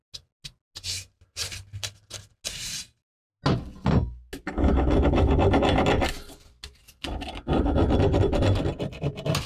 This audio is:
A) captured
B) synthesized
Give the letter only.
A